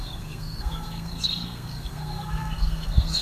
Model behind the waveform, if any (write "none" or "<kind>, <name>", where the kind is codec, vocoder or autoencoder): codec, SNAC